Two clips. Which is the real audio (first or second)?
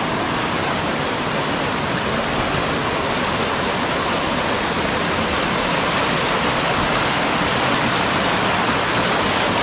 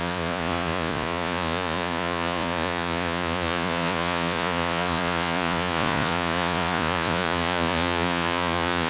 first